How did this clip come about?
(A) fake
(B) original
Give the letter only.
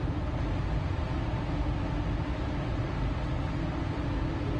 B